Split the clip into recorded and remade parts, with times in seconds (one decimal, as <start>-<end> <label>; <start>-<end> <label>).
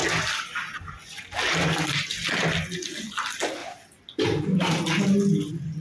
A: 0.0-5.8 recorded